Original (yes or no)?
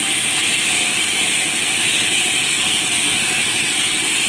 no